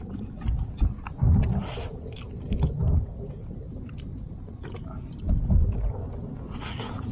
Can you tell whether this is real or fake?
real